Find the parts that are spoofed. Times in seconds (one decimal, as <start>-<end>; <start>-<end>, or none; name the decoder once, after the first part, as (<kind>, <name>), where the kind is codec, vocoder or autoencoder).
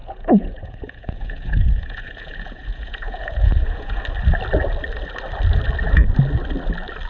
0.0-4.0 (vocoder, Vocos)